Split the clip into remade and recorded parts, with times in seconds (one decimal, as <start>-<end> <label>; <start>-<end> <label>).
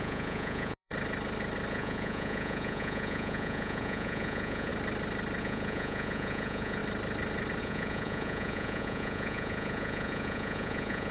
0.0-0.9 remade; 0.9-1.7 recorded; 1.7-4.7 remade; 4.7-5.4 recorded; 5.4-6.8 remade; 6.8-7.6 recorded; 7.6-11.1 remade